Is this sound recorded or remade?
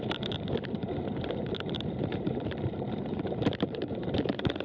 remade